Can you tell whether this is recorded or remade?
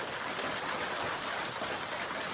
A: recorded